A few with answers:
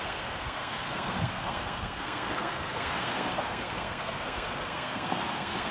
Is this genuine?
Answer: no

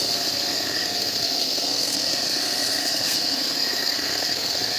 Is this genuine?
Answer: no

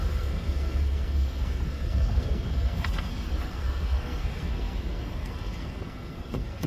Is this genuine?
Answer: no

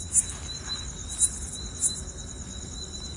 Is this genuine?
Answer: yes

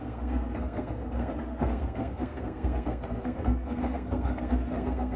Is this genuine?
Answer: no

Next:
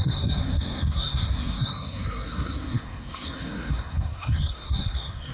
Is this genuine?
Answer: no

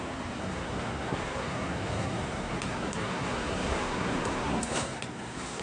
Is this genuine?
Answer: no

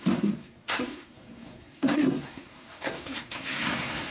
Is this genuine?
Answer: no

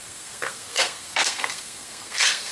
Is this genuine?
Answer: no